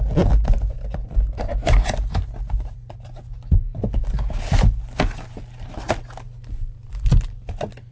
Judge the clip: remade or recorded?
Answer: recorded